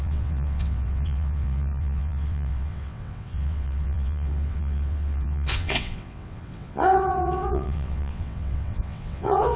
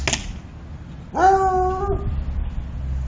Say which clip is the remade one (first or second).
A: first